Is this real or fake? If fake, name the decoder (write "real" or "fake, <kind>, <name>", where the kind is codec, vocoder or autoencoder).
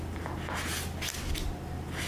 real